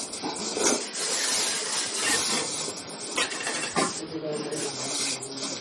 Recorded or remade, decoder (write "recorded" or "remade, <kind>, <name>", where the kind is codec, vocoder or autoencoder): recorded